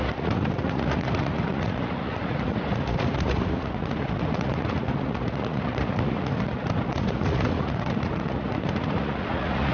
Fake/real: fake